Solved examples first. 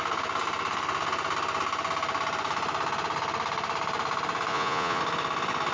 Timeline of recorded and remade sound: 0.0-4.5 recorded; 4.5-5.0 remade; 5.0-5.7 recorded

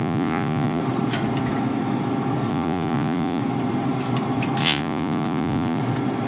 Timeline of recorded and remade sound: 0.0-0.8 remade; 0.8-2.5 recorded; 2.5-3.4 remade; 3.4-4.6 recorded; 4.6-5.8 remade; 5.8-6.3 recorded

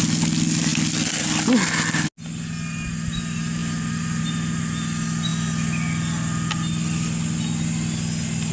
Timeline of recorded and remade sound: 0.0-8.5 recorded

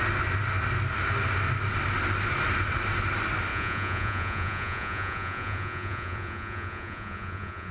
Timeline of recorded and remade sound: 0.0-3.5 recorded; 3.5-7.7 remade

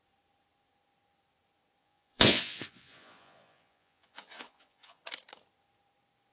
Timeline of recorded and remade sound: 0.0-1.8 recorded; 1.8-5.0 remade; 5.0-6.3 recorded

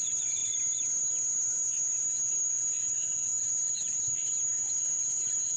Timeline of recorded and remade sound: 0.0-5.6 recorded

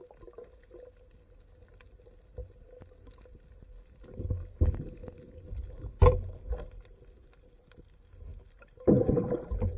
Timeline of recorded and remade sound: 0.0-9.8 recorded

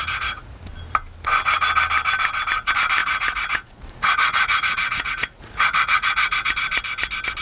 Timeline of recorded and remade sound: 0.0-0.6 remade; 0.6-3.0 recorded; 3.0-6.5 remade; 6.5-7.4 recorded